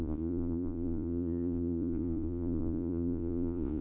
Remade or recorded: remade